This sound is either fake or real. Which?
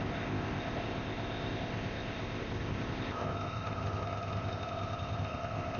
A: fake